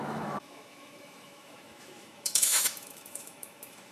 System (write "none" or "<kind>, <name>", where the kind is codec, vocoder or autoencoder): autoencoder, DAC-VAE